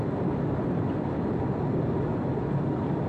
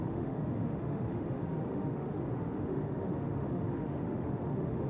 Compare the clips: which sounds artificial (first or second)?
second